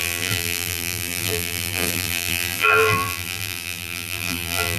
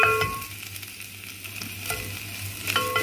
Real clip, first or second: second